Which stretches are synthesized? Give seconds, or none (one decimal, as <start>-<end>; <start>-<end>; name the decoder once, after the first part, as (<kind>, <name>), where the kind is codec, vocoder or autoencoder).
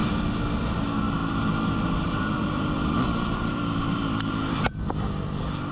1.2-4.6 (vocoder, BigVGAN v2)